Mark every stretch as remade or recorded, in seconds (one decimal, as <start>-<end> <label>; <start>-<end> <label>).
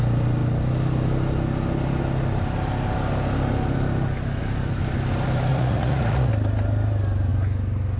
0.0-5.5 recorded; 5.5-6.3 remade; 6.3-8.0 recorded